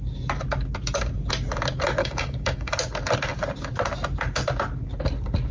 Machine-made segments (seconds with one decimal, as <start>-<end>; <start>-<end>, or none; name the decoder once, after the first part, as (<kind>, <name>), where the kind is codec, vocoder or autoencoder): 2.0-2.7 (codec, DAC)